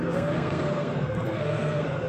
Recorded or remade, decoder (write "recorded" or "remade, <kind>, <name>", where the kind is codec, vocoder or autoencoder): remade, codec, SNAC